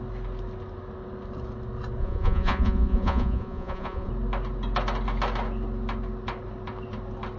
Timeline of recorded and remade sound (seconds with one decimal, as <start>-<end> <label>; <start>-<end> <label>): 0.0-2.0 recorded; 2.0-4.1 remade; 4.1-7.4 recorded